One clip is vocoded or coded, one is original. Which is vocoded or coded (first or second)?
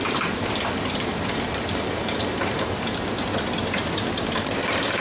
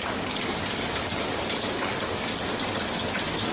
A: second